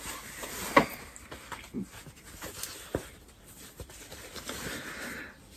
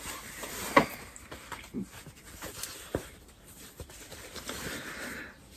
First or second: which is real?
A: first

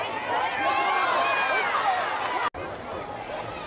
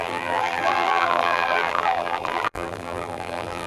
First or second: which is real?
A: first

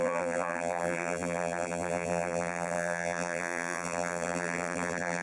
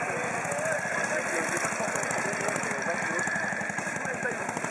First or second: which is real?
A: second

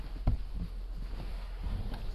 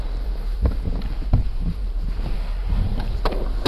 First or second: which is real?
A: first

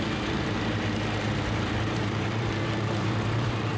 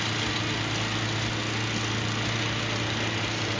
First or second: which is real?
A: second